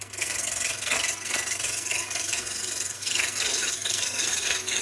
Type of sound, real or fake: fake